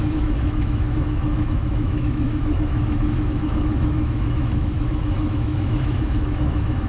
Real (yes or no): no